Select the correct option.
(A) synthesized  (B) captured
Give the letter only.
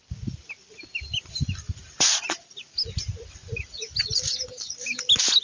B